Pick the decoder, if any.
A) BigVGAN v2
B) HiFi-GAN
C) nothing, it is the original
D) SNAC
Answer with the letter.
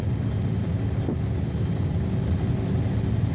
C